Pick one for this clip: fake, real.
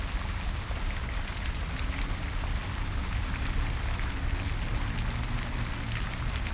real